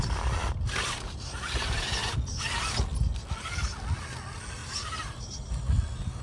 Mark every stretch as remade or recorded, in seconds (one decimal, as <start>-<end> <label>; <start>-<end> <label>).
0.0-0.4 recorded; 0.4-2.2 remade; 2.2-4.6 recorded; 4.6-5.2 remade; 5.2-6.2 recorded